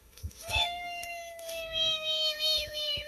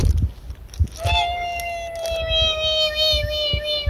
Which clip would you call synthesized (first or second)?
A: first